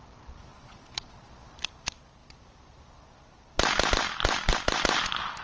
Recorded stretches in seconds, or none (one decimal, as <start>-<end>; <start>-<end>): 0.0-0.5; 1.3-5.4